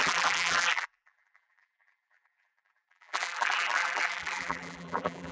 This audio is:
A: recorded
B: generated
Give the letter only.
B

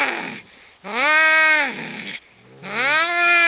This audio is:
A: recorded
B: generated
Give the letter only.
A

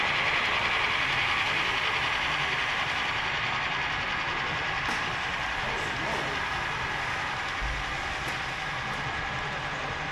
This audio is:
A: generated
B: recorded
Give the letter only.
B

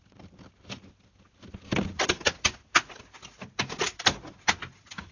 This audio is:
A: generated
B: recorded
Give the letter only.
B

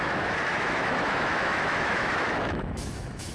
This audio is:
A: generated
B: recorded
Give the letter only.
A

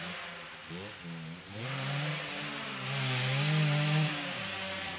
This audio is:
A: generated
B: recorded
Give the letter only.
B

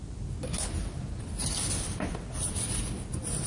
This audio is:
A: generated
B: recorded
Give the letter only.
B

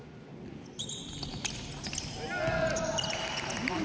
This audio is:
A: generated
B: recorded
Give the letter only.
B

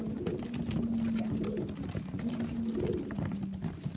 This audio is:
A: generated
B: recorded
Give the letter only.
B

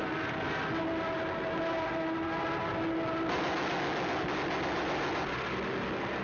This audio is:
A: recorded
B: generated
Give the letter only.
A